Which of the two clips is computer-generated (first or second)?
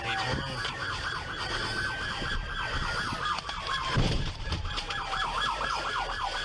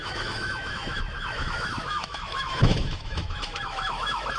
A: second